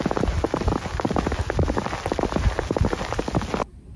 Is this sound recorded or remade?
recorded